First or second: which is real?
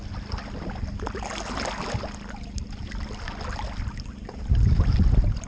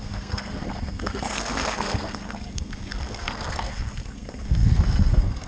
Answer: first